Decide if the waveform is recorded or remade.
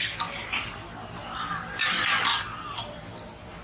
recorded